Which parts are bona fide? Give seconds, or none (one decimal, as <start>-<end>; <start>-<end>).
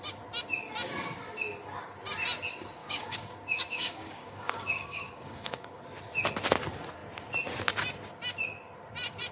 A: 0.0-2.8; 5.8-9.3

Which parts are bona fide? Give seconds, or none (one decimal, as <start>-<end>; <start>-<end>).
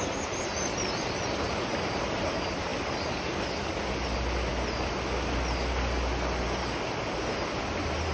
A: 0.0-8.1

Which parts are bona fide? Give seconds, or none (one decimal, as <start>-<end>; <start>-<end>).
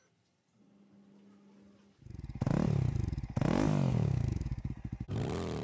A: 0.0-3.9; 4.7-5.6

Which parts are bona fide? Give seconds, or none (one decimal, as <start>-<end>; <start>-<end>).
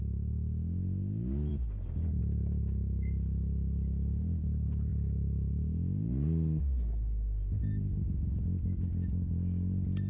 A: 0.0-1.5; 2.2-10.1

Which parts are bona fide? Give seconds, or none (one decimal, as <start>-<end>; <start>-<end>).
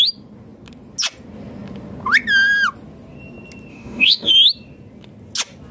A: 0.0-3.7; 4.3-5.7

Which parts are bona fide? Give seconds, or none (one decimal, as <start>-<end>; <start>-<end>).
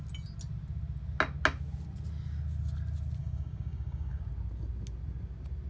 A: 0.0-3.2; 4.2-5.7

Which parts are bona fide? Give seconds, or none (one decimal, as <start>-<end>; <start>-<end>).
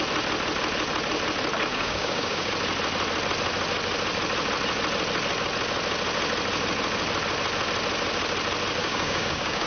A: 0.0-1.7; 2.5-8.8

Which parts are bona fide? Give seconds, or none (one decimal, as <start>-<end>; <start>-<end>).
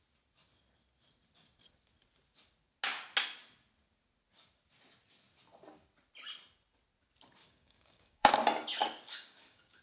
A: 0.0-7.4; 8.3-8.8